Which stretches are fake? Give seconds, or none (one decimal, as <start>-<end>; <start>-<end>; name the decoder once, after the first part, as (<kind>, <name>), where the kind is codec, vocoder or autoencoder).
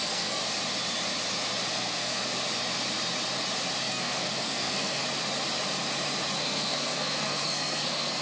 0.0-0.4 (codec, SNAC); 1.7-2.4; 3.8-5.0; 6.4-8.2